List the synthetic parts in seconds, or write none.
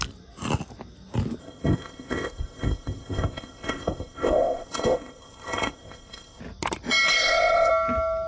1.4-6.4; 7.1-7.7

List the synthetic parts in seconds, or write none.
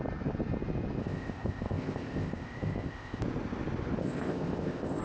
1.0-3.2; 4.0-5.0